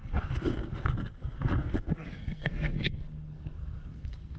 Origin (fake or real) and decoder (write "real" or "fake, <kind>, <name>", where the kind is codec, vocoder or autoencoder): fake, codec, SNAC